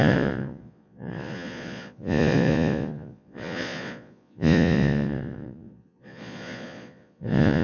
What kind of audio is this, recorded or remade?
remade